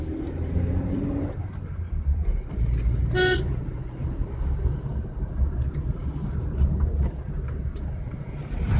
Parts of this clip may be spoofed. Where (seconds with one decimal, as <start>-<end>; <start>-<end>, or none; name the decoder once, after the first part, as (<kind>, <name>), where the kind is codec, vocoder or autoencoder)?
0.0-2.3 (vocoder, BigVGAN v2); 2.8-4.2; 6.0-8.8